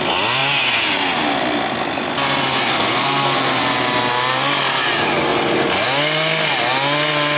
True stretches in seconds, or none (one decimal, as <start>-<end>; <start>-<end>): 0.0-2.6; 3.6-7.4